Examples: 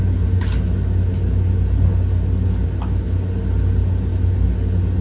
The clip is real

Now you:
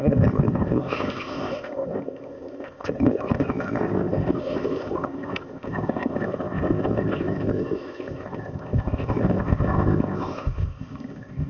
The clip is fake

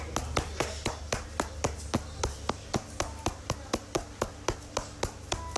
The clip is real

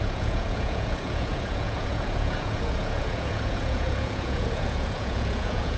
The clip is fake